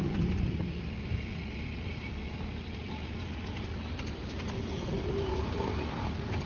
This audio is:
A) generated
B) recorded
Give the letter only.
B